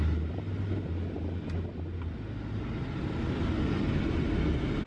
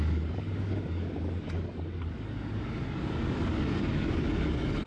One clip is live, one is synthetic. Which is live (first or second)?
first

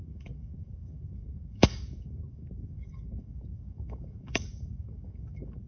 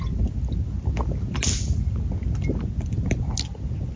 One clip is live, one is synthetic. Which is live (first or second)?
second